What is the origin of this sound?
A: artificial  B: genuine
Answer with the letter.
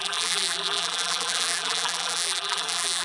A